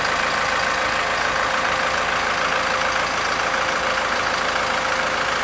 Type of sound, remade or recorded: recorded